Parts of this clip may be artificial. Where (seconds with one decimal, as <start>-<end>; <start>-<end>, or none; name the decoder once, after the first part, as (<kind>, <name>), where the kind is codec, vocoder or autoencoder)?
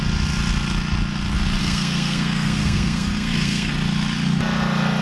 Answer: 1.6-3.7 (codec, SNAC)